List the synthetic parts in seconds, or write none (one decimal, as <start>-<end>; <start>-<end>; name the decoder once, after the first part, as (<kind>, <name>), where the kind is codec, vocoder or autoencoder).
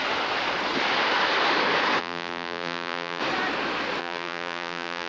2.0-3.2 (vocoder, BigVGAN v2); 4.0-5.1